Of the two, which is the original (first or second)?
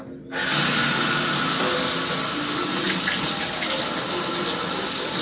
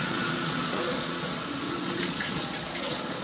first